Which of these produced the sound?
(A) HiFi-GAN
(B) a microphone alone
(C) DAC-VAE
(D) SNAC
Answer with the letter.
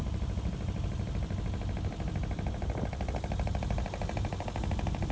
B